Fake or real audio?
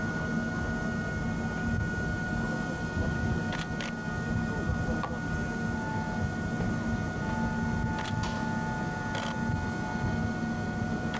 real